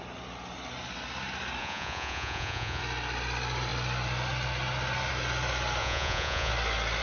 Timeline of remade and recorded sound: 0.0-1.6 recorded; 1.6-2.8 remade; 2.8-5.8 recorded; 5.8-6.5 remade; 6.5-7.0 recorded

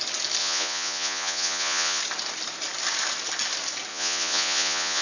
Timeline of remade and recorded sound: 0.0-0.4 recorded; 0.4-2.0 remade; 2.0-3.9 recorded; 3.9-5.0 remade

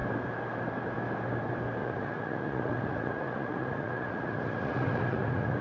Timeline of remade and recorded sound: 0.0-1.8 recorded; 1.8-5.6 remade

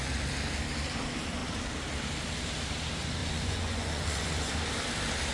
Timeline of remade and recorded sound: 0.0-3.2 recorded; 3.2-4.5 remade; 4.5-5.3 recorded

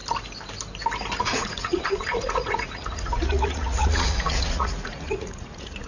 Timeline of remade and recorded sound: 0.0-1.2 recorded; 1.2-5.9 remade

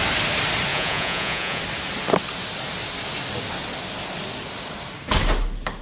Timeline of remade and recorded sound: 0.0-0.7 recorded; 0.7-1.6 remade; 1.6-5.8 recorded

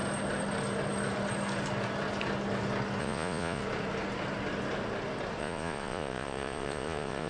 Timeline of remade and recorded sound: 0.0-3.0 recorded; 3.0-3.6 remade; 3.6-5.4 recorded; 5.4-7.3 remade

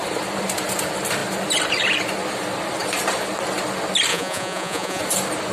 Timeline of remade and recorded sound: 0.0-4.1 recorded; 4.1-5.0 remade; 5.0-5.5 recorded